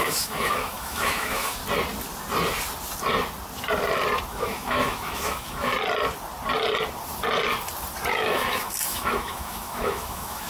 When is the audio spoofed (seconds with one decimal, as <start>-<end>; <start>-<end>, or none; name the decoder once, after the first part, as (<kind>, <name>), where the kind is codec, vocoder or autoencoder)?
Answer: 0.0-1.6 (autoencoder, DAC-VAE); 4.3-5.7; 8.1-10.5